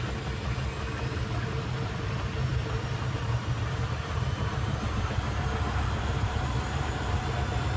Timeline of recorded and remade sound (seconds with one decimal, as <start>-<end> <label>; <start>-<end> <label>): 0.0-2.5 recorded; 2.5-7.2 remade; 7.2-7.8 recorded